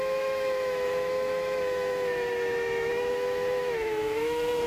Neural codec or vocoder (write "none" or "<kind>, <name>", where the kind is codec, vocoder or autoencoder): autoencoder, DAC-VAE